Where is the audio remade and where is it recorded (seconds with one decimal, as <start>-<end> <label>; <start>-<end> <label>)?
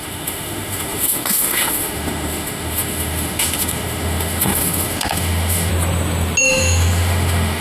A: 0.0-5.7 remade; 5.7-6.4 recorded; 6.4-7.6 remade